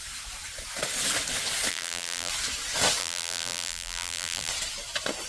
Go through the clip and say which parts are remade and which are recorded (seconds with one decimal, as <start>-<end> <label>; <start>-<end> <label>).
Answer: 0.0-1.7 recorded; 1.7-2.3 remade; 2.3-3.0 recorded; 3.0-4.5 remade; 4.5-5.3 recorded